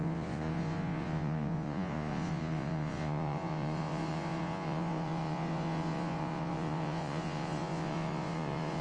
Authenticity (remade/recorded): remade